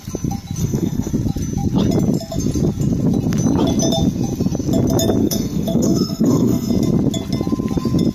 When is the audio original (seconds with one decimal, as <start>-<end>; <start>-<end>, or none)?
0.0-0.6; 1.1-5.2; 6.7-8.1